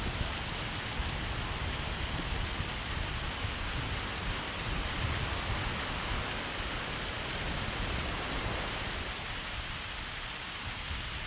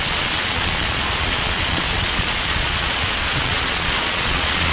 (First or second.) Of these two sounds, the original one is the first